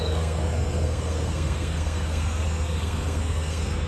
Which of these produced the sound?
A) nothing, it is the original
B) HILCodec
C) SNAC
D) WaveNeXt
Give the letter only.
C